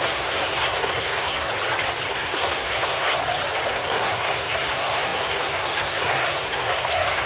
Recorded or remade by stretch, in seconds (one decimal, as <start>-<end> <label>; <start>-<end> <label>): 0.0-1.5 remade; 1.5-2.1 recorded; 2.1-3.2 remade; 3.2-3.7 recorded; 3.7-7.3 remade